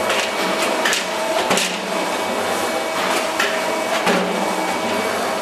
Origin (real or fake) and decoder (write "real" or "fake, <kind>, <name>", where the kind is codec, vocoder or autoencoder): real